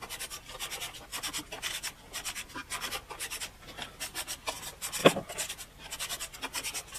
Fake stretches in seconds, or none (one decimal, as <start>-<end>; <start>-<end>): 5.0-5.5